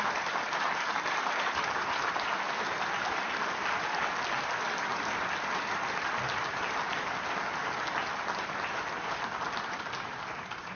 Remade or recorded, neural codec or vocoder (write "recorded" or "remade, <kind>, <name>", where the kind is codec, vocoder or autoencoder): recorded